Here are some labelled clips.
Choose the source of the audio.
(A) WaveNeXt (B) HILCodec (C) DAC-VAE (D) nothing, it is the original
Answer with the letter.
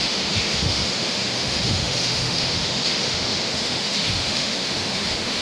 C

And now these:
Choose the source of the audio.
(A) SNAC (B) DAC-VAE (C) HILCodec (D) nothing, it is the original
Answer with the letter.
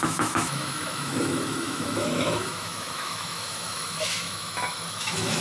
B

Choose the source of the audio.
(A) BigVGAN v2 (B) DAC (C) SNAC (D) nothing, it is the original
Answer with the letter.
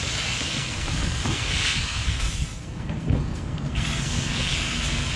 C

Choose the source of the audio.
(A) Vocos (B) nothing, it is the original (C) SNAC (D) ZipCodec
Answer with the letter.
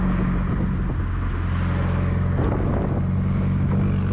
B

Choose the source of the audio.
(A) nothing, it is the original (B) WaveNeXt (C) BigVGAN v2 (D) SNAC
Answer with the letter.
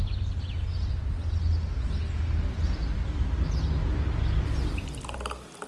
A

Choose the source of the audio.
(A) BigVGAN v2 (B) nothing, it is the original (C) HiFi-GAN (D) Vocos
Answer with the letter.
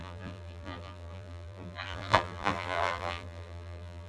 A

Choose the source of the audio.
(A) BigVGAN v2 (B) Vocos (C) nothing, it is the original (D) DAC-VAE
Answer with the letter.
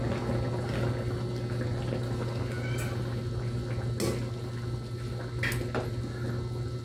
C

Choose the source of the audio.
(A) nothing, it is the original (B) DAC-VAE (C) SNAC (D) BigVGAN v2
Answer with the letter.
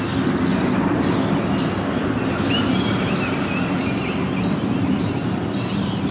A